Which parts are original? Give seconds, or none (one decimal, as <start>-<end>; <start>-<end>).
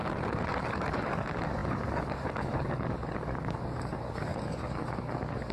0.0-0.6